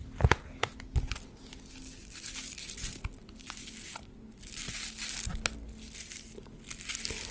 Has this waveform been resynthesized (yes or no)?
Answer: no